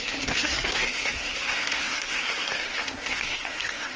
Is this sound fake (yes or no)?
yes